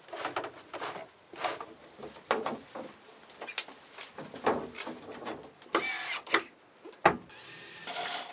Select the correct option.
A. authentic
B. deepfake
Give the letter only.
A